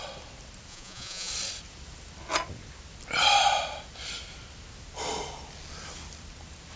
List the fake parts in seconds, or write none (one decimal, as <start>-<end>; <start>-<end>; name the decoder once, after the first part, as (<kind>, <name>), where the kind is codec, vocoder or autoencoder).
0.7-1.3 (vocoder, Vocos)